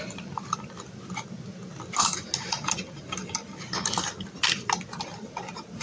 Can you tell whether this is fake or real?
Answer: real